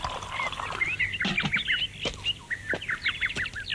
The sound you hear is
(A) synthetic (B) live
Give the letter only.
B